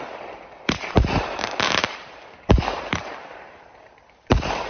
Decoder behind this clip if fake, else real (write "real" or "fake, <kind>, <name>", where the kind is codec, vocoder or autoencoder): fake, vocoder, BigVGAN v2